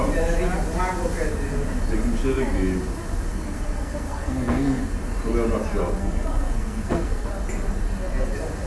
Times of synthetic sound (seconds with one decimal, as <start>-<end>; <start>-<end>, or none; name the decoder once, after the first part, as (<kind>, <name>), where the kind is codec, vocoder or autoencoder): 3.3-4.8 (codec, SNAC); 6.0-7.3